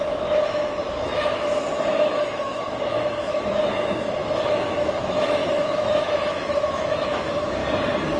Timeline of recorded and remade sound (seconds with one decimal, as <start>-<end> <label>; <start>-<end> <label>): 0.0-7.6 remade; 7.6-8.2 recorded